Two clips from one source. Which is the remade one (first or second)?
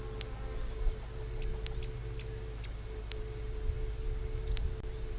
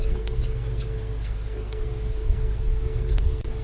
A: second